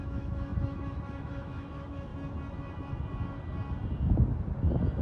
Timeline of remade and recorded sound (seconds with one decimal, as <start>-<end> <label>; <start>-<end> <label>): 0.0-2.1 remade; 2.1-5.0 recorded